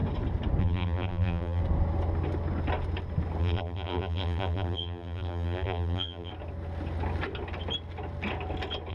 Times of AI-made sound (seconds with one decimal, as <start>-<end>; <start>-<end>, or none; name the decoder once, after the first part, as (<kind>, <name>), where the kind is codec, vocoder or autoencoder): 0.6-1.6 (vocoder, BigVGAN v2); 3.4-6.3